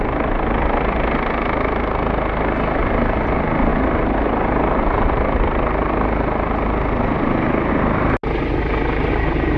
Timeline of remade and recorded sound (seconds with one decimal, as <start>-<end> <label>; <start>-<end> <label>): 0.0-9.6 recorded